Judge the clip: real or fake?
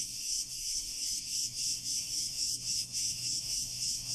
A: fake